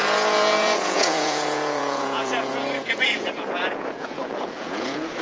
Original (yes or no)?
no